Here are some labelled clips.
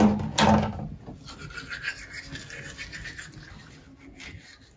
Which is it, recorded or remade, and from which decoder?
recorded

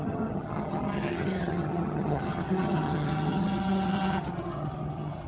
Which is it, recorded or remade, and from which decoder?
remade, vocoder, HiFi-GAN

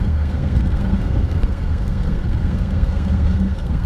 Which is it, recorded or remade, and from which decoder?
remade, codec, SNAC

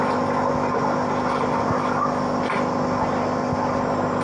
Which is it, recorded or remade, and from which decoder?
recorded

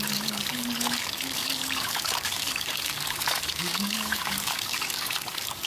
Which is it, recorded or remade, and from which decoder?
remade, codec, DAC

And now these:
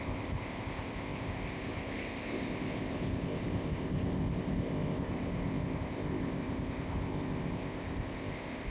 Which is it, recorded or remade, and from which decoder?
remade, codec, ZipCodec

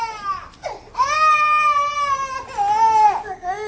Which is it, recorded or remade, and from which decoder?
recorded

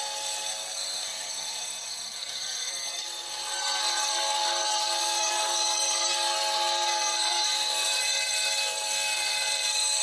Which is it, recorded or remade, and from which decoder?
remade, codec, SNAC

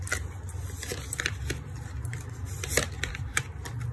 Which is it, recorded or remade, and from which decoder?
recorded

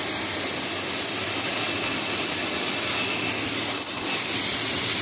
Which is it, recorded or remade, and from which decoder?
recorded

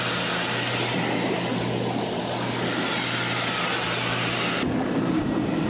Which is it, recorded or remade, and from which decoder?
recorded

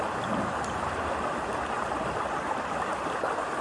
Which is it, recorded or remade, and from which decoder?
recorded